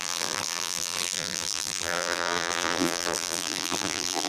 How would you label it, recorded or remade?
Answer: remade